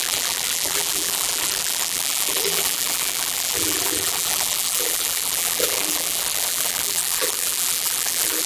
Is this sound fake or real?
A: fake